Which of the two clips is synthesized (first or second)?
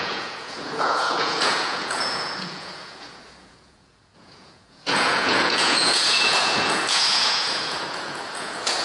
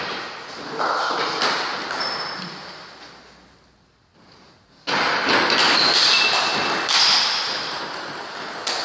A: first